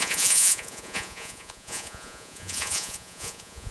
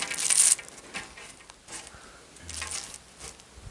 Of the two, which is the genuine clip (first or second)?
second